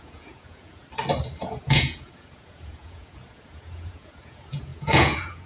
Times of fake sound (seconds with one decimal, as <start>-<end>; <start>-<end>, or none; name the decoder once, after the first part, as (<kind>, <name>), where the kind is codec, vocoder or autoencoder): 0.0-0.8 (vocoder, Vocos); 1.4-5.5